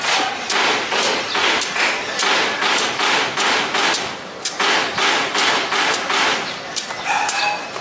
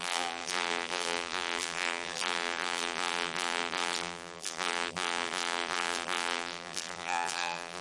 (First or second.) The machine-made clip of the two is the second